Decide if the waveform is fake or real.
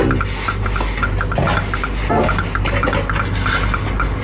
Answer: real